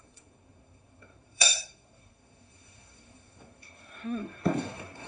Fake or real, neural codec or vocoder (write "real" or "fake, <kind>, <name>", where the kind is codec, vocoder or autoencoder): fake, codec, SNAC